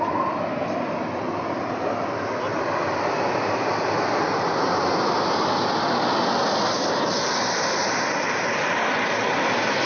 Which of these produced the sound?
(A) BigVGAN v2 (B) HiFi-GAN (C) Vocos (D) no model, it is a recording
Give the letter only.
D